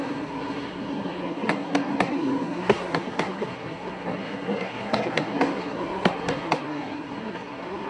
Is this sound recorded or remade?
remade